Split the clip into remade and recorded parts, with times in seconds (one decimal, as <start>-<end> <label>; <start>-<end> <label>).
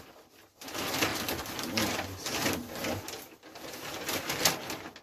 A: 0.0-5.0 recorded